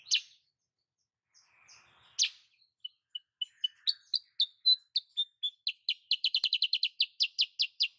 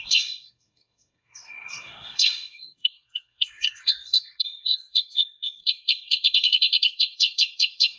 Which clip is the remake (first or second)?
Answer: second